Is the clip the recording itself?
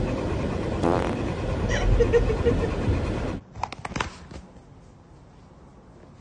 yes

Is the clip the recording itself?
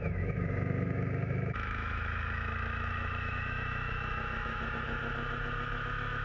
no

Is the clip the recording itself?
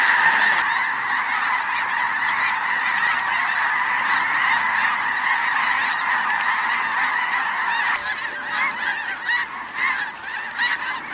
yes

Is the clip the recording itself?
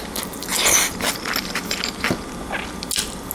yes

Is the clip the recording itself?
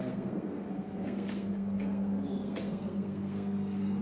no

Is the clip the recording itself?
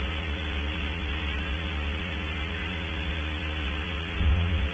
no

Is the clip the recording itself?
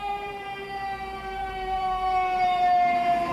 no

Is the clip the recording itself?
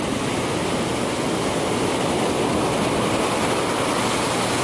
yes